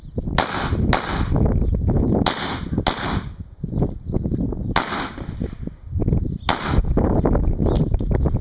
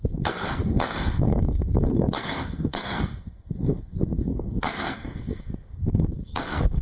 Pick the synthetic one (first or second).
second